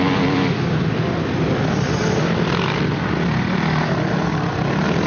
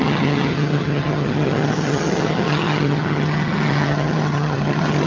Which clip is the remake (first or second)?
second